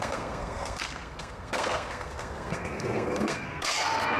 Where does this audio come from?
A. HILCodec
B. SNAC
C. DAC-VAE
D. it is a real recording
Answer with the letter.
B